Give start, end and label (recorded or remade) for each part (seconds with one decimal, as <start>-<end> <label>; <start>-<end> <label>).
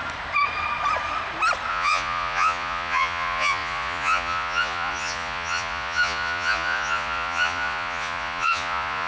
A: 0.0-1.7 recorded; 1.7-9.1 remade